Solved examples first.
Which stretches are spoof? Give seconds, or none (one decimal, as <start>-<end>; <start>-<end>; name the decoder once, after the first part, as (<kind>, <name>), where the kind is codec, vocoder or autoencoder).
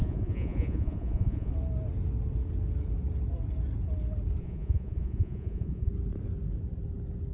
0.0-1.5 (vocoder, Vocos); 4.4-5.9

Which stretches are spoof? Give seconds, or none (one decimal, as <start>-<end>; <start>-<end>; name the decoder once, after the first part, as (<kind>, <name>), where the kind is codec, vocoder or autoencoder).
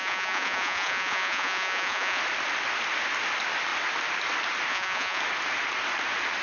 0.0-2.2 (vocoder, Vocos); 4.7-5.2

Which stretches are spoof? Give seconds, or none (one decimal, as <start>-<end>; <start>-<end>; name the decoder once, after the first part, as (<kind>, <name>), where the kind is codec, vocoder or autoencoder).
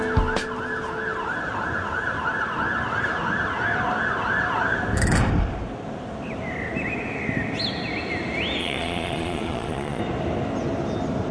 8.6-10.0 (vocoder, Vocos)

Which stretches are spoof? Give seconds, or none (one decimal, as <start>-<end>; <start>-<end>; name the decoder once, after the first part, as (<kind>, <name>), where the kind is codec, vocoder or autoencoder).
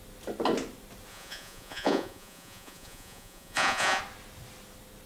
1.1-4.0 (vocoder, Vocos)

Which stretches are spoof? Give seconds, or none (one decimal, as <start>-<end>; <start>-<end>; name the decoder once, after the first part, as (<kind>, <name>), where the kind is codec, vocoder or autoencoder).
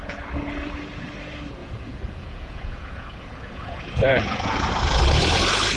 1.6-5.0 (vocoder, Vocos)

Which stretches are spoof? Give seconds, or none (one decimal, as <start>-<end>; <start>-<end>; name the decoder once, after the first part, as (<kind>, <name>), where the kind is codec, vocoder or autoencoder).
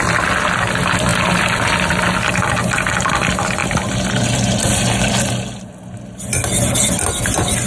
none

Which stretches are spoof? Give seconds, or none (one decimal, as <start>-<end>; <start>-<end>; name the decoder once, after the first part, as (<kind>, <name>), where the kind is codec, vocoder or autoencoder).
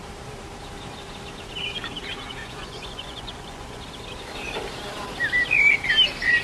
2.4-3.8 (vocoder, Vocos)